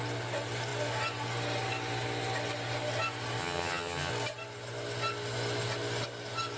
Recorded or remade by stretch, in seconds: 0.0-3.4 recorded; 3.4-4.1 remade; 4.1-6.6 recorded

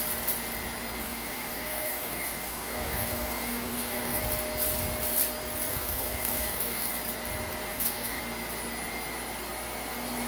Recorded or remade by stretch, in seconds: 0.0-1.0 recorded; 1.0-4.2 remade; 4.2-5.7 recorded; 5.7-6.9 remade; 6.9-7.7 recorded; 7.7-8.2 remade; 8.2-10.3 recorded

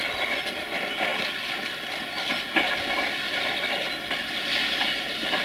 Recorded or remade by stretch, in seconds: 0.0-5.4 recorded

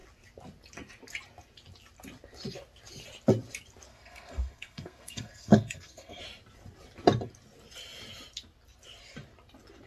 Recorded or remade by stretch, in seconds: 0.0-3.9 recorded; 3.9-6.2 remade; 6.2-9.9 recorded

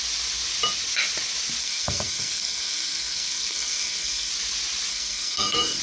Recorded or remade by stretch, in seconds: 0.0-1.6 recorded; 1.6-4.3 remade; 4.3-4.9 recorded; 4.9-5.8 remade

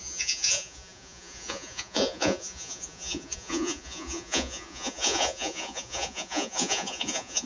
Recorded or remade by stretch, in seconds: 0.0-7.5 remade